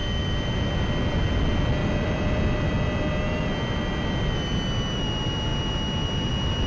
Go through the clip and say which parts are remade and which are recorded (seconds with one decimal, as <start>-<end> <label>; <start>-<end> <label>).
0.0-1.2 remade; 1.2-1.8 recorded; 1.8-2.7 remade; 2.7-6.7 recorded